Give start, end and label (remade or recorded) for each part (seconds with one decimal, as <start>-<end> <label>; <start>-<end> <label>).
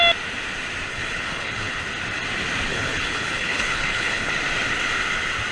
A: 0.0-0.9 recorded; 0.9-1.8 remade; 1.8-2.7 recorded; 2.7-4.3 remade; 4.3-5.5 recorded